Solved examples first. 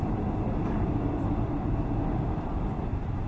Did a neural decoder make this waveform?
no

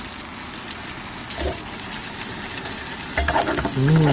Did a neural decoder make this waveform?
no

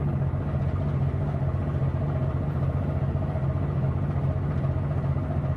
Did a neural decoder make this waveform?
no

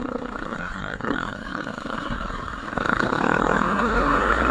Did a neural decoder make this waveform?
yes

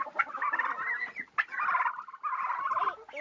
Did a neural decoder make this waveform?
no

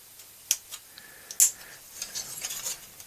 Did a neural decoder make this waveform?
no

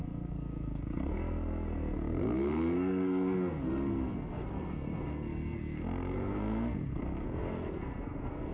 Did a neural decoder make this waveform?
yes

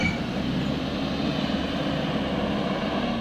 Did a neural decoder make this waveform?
no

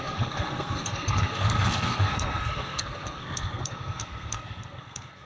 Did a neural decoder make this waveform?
yes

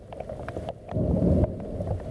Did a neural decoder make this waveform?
no